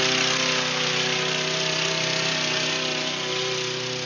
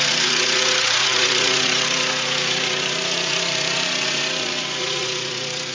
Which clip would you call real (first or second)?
first